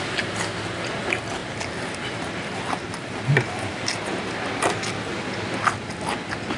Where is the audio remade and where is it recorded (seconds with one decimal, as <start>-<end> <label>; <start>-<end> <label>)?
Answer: 0.0-6.6 recorded